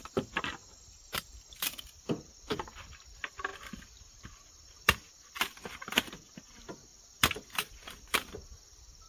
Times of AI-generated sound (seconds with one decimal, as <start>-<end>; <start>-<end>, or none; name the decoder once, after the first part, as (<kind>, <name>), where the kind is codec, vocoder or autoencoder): 0.0-0.6 (vocoder, BigVGAN v2); 1.3-9.1